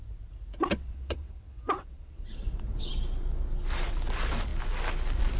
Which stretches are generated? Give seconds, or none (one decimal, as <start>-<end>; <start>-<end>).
0.6-2.9